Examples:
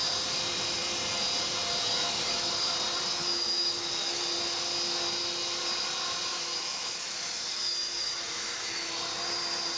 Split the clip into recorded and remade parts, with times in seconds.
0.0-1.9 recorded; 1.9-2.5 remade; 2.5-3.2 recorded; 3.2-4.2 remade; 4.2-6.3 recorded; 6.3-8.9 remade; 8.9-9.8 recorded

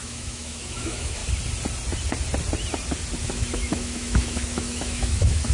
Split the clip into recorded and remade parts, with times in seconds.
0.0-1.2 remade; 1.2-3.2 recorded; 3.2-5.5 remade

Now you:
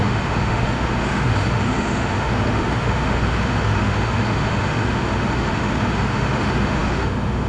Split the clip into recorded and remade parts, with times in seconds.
0.0-7.5 remade

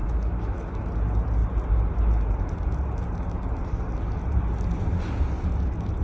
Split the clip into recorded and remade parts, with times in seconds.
0.0-0.8 remade; 0.8-6.0 recorded

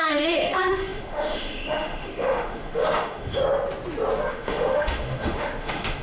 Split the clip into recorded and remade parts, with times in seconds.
0.0-3.4 remade; 3.4-4.3 recorded; 4.3-6.0 remade

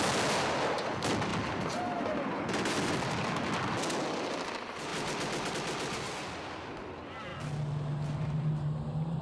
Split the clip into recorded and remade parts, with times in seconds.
0.0-9.2 recorded